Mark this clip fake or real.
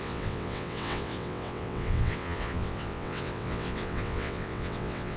fake